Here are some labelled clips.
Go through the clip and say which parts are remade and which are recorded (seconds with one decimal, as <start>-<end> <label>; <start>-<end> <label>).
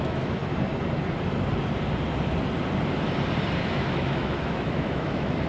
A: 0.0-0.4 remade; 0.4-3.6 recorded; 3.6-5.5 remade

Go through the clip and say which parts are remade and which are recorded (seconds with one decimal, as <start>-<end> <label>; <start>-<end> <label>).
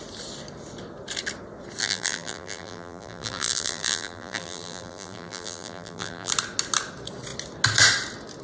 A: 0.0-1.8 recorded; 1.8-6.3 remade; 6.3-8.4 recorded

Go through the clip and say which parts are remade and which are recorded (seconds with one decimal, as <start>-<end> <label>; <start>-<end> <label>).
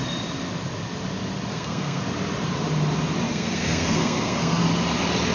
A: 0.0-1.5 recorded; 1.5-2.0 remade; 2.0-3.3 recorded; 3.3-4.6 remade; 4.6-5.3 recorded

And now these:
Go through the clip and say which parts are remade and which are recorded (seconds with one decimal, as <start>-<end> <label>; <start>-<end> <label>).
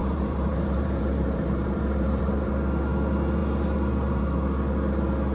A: 0.0-2.5 remade; 2.5-5.3 recorded